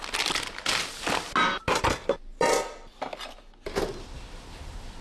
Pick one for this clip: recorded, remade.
recorded